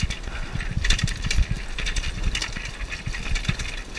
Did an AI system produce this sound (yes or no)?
no